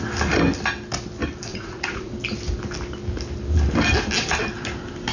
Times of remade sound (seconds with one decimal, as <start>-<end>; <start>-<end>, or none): 1.5-2.1